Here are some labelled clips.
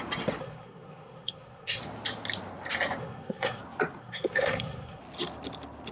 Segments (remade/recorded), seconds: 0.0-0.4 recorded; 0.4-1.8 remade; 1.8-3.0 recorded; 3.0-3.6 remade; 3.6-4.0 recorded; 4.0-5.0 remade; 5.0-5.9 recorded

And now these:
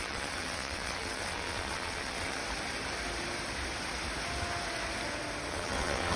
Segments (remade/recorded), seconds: 0.0-2.4 remade; 2.4-5.5 recorded; 5.5-6.2 remade

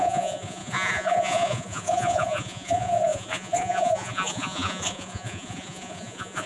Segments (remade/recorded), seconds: 0.0-6.5 remade

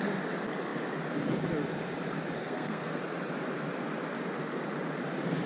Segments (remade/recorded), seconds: 0.0-2.4 recorded; 2.4-3.0 remade; 3.0-5.5 recorded

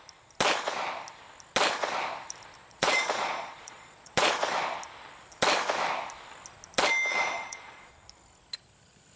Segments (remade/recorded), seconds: 0.0-2.6 recorded; 2.6-4.3 remade; 4.3-7.1 recorded; 7.1-7.9 remade; 7.9-9.2 recorded

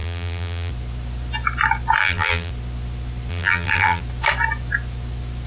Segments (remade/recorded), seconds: 0.0-0.7 remade; 0.7-2.0 recorded; 2.0-2.5 remade; 2.5-3.3 recorded; 3.3-4.0 remade; 4.0-5.5 recorded

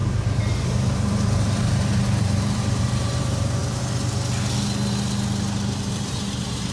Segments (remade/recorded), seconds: 0.0-3.6 remade; 3.6-5.8 recorded; 5.8-6.7 remade

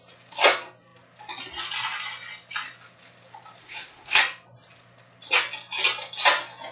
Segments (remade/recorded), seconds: 0.0-3.6 recorded; 3.6-4.2 remade; 4.2-6.7 recorded